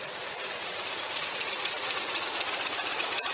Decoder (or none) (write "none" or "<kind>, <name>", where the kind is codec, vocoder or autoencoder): vocoder, Vocos